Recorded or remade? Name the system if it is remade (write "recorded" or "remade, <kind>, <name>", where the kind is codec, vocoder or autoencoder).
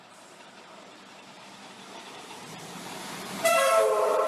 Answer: remade, vocoder, BigVGAN v2